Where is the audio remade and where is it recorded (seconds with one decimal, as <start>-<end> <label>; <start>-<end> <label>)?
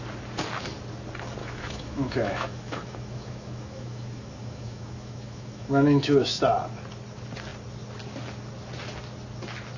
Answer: 0.0-1.4 recorded; 1.4-6.4 remade; 6.4-9.8 recorded